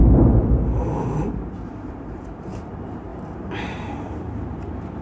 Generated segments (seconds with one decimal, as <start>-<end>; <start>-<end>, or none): 0.0-3.1; 3.6-5.0